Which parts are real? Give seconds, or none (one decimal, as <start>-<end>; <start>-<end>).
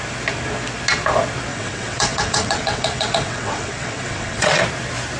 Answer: 0.0-1.5; 4.6-5.2